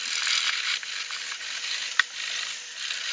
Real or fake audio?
real